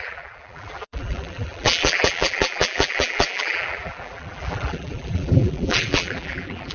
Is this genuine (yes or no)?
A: no